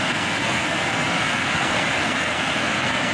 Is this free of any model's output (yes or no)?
no